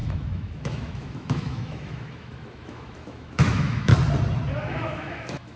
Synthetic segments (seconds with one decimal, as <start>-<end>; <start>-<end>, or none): 0.0-3.9; 4.6-5.6

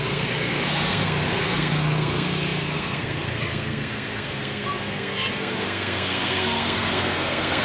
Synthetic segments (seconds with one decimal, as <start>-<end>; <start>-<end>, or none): 0.0-7.6

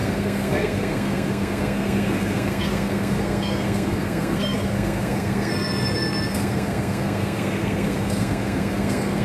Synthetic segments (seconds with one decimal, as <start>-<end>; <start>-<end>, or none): 0.0-9.2